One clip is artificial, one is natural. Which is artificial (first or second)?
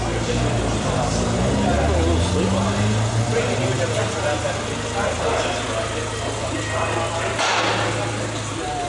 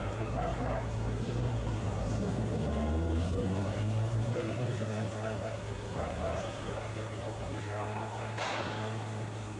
second